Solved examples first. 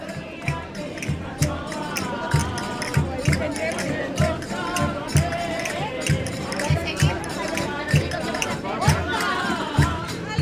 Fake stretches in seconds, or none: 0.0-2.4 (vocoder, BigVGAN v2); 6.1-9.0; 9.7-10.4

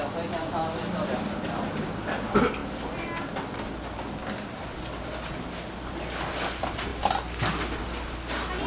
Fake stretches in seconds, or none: none

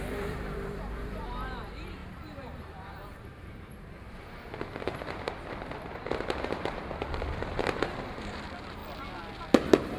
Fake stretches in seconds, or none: 0.0-8.8 (vocoder, BigVGAN v2)

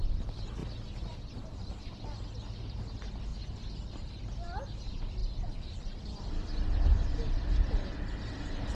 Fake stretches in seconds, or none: 5.2-6.3 (vocoder, BigVGAN v2)

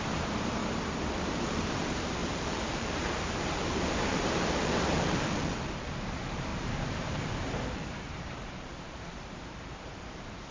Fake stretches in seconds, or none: 0.0-0.6 (vocoder, BigVGAN v2); 1.1-10.5

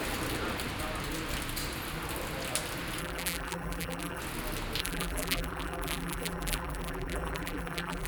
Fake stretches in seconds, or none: 3.0-4.2 (vocoder, BigVGAN v2); 4.8-8.1